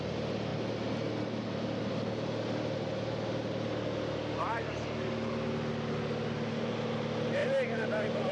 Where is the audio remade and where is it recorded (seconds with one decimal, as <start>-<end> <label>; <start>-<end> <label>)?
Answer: 0.0-8.3 recorded